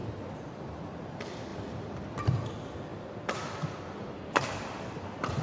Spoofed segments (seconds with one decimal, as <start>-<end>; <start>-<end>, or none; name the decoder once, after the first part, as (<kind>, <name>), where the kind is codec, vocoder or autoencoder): 0.0-1.0 (vocoder, BigVGAN v2); 1.5-2.5; 2.9-5.0